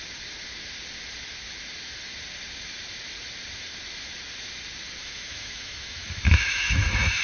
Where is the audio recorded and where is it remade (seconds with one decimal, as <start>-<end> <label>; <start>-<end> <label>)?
0.0-5.0 recorded; 5.0-7.2 remade